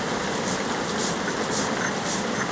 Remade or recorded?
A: recorded